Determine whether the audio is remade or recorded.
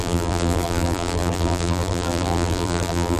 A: remade